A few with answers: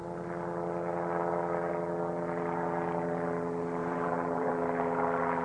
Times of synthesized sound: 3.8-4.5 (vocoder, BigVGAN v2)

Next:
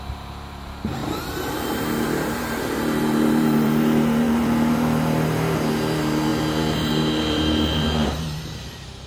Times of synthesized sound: 0.0-9.1 (vocoder, BigVGAN v2)